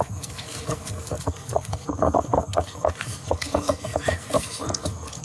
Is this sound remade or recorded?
remade